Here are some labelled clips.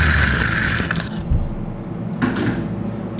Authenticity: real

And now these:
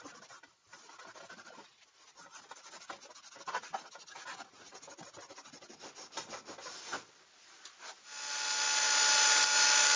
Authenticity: real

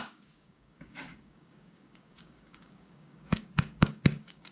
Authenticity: fake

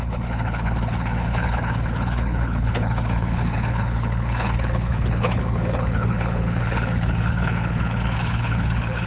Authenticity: fake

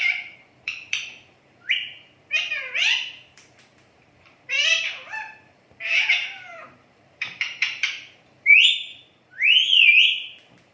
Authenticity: fake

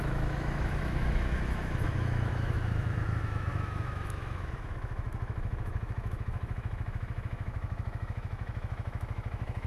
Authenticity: fake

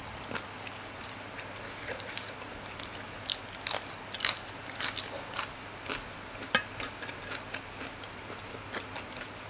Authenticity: real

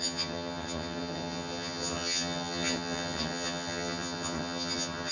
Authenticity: fake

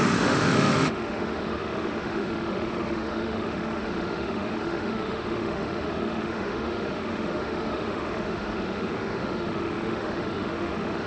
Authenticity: fake